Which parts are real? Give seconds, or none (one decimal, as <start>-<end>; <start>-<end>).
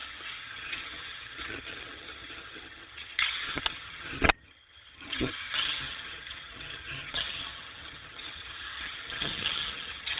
none